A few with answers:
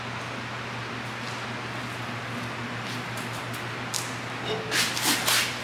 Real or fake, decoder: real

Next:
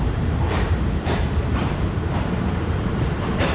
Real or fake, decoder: fake, vocoder, BigVGAN v2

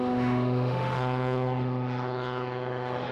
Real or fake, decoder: fake, autoencoder, DAC-VAE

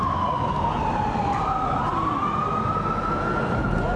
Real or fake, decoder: real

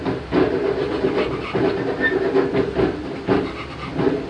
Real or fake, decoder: real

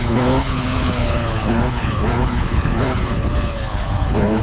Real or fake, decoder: fake, codec, HILCodec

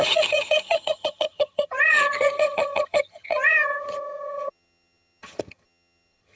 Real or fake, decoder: fake, vocoder, HiFi-GAN